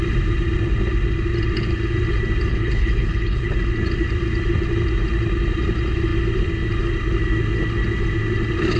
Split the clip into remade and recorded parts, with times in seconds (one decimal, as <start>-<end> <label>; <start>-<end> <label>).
0.0-2.5 recorded; 2.5-3.5 remade; 3.5-8.8 recorded